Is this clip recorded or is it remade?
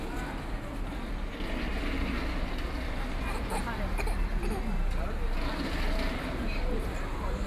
recorded